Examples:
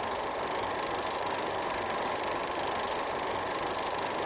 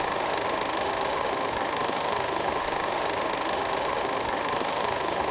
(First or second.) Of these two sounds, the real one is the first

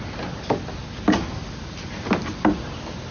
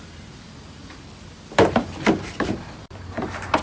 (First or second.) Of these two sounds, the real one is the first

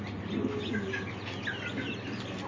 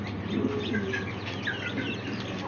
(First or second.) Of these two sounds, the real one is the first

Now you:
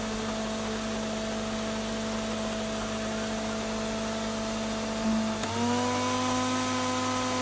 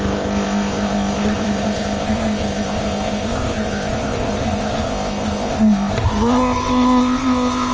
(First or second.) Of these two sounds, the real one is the first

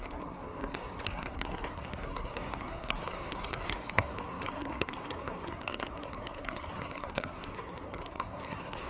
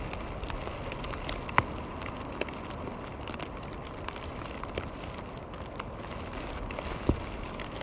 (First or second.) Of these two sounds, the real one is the second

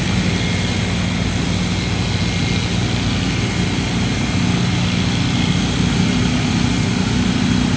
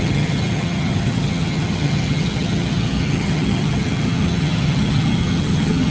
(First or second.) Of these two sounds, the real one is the first